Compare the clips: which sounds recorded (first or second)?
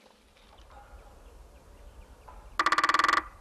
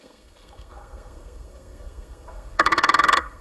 first